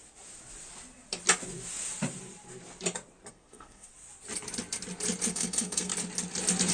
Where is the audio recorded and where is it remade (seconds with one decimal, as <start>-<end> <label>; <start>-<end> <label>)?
0.0-3.3 recorded; 3.3-3.9 remade; 3.9-5.3 recorded; 5.3-5.9 remade; 5.9-6.7 recorded